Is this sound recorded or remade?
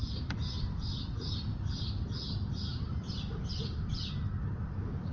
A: recorded